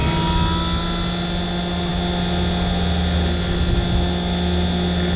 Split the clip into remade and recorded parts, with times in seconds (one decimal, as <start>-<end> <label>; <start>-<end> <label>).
0.0-5.2 recorded